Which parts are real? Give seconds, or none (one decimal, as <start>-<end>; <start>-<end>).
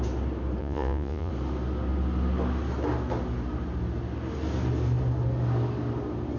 0.0-0.6; 1.3-6.4